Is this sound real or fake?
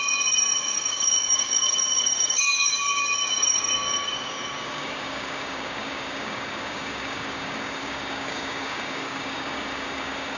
fake